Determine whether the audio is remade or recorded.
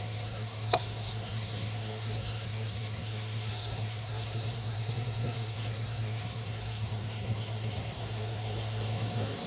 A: remade